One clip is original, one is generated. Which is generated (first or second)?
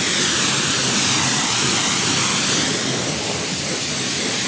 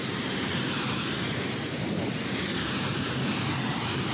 second